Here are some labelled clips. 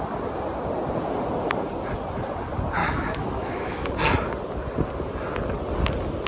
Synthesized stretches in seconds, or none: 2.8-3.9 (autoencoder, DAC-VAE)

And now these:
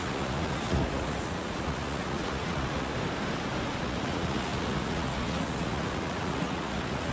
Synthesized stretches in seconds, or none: 0.0-2.9 (vocoder, Vocos); 3.8-7.1

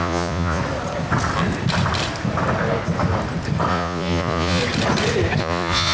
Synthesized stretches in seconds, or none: 0.0-0.6 (vocoder, Vocos); 3.7-4.6; 5.4-5.9